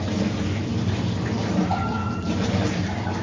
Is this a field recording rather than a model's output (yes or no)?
no